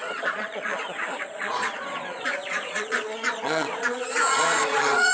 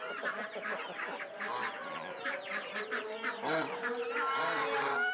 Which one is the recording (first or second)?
second